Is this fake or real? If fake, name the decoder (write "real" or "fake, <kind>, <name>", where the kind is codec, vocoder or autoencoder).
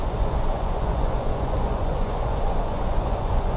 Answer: fake, vocoder, Vocos